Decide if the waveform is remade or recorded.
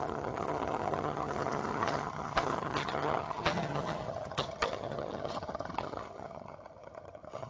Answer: remade